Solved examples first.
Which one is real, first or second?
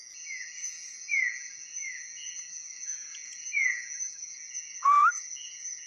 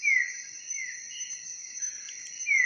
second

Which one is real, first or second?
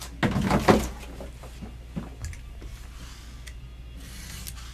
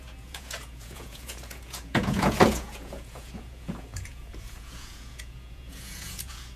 first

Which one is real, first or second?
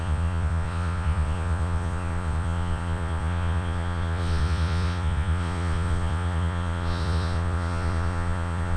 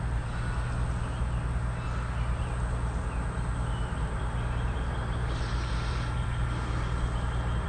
second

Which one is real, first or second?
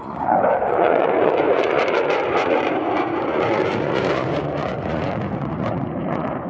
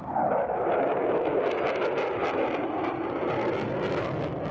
second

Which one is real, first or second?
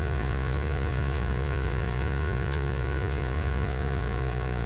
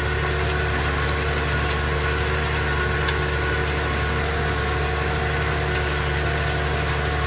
second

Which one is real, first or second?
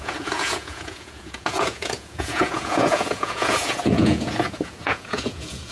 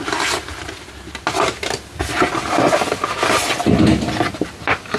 second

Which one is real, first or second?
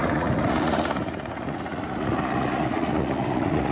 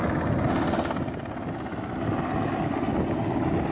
second